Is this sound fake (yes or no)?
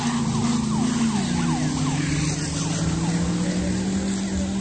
no